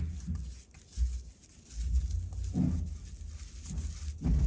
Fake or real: real